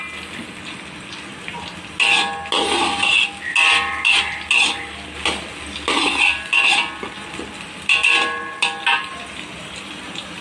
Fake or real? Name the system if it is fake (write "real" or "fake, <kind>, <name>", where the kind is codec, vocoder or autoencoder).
real